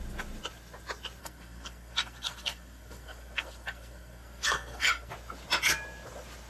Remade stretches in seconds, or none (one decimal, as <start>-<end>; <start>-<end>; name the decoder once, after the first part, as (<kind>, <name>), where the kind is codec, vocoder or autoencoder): 1.2-5.1 (codec, SNAC)